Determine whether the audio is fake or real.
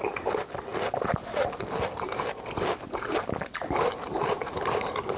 real